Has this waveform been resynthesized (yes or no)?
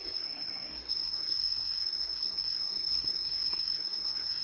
yes